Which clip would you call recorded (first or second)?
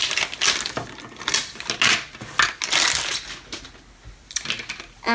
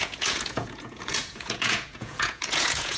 first